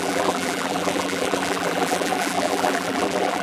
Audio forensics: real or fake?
fake